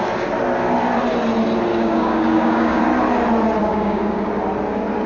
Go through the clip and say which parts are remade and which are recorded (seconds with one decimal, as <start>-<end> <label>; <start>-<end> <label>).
0.0-1.7 recorded; 1.7-2.8 remade; 2.8-3.6 recorded; 3.6-4.3 remade; 4.3-5.1 recorded